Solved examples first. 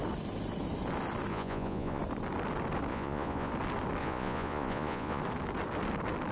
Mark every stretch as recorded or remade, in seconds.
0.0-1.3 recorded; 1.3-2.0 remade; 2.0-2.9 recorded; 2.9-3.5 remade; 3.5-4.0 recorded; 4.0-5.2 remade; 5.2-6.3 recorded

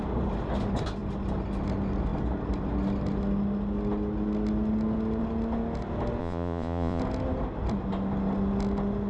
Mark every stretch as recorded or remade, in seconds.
0.0-6.2 recorded; 6.2-7.0 remade; 7.0-9.1 recorded

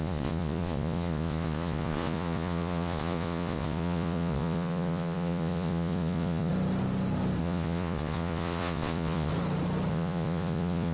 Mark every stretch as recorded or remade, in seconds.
0.0-6.5 remade; 6.5-7.4 recorded; 7.4-9.3 remade; 9.3-9.9 recorded; 9.9-10.9 remade

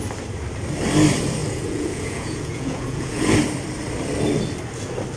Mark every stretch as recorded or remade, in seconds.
0.0-1.4 recorded; 1.4-3.3 remade; 3.3-5.2 recorded

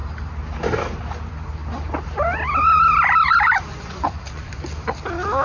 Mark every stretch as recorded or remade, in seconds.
0.0-3.7 recorded; 3.7-4.7 remade; 4.7-5.4 recorded

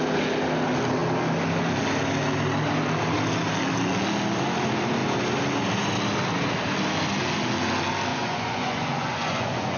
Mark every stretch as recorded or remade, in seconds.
0.0-8.1 recorded; 8.1-9.8 remade

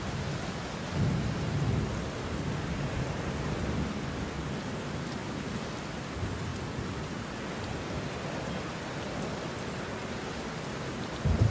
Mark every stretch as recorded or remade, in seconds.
0.0-11.5 recorded